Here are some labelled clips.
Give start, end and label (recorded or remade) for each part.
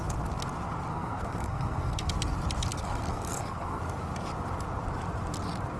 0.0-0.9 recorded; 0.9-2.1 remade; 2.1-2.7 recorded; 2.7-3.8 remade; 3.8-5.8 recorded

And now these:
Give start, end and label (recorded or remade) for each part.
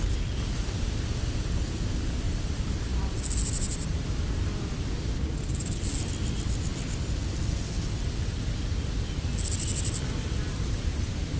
0.0-11.4 recorded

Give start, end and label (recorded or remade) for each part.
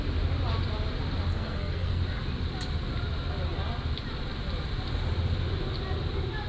0.0-1.3 recorded; 1.3-2.0 remade; 2.0-6.5 recorded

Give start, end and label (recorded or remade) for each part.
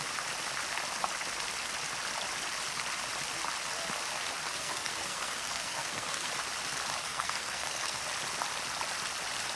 0.0-4.5 recorded; 4.5-6.3 remade; 6.3-7.0 recorded; 7.0-8.0 remade; 8.0-9.6 recorded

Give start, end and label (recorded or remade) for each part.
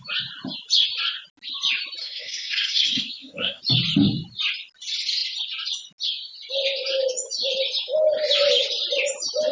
0.0-2.0 recorded; 2.0-3.6 remade; 3.6-9.5 recorded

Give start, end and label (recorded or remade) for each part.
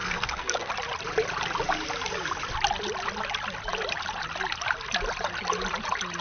0.0-0.7 remade; 0.7-6.2 recorded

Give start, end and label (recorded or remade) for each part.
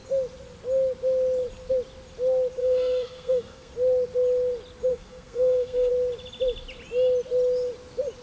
0.0-2.6 recorded; 2.6-3.7 remade; 3.7-4.9 recorded; 4.9-5.9 remade; 5.9-8.2 recorded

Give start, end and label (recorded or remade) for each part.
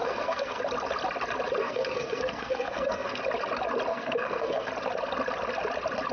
0.0-0.6 remade; 0.6-1.6 recorded; 1.6-3.2 remade; 3.2-3.9 recorded; 3.9-4.7 remade; 4.7-6.1 recorded